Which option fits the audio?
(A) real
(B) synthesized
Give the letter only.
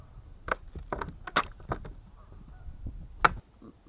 A